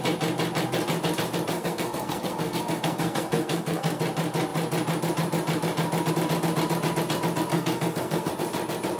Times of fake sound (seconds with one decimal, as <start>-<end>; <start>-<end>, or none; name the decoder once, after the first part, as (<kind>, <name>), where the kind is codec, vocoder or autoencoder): 1.5-4.0 (codec, SNAC); 7.5-8.3